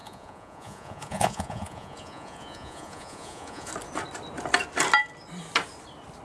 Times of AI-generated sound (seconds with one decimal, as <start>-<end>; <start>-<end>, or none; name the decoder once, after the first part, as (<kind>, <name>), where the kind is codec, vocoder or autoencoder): 0.0-3.7 (vocoder, Vocos)